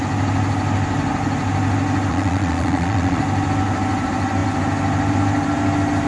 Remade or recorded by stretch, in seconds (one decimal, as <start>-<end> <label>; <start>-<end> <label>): 0.0-2.1 recorded; 2.1-3.2 remade; 3.2-6.1 recorded